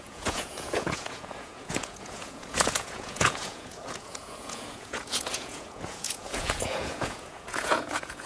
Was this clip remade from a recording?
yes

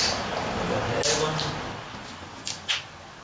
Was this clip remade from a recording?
no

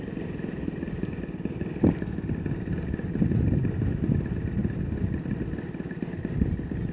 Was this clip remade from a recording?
no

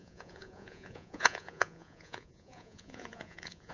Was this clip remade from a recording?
yes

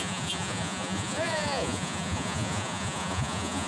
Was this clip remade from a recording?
yes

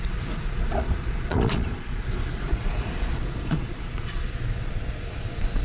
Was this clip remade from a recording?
yes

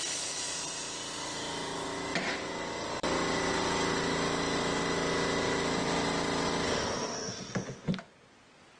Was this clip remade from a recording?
no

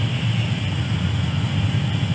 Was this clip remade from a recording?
no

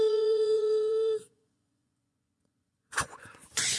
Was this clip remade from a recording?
yes